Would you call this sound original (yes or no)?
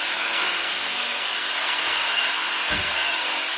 no